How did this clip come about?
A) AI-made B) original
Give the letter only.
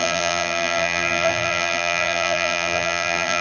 A